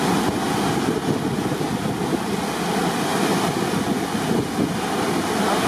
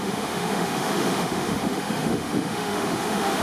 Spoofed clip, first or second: second